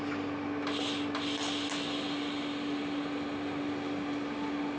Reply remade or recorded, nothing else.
recorded